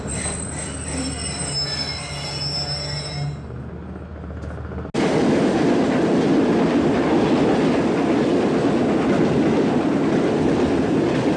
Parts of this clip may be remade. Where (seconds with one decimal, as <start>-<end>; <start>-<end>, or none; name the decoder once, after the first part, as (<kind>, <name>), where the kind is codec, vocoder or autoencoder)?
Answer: none